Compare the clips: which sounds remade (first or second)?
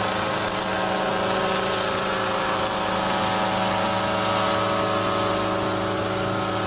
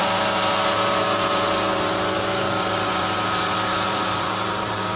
second